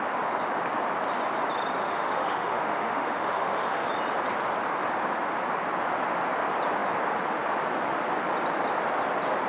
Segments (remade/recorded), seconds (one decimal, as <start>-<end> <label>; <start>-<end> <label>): 0.0-1.8 recorded; 1.8-3.9 remade; 3.9-9.5 recorded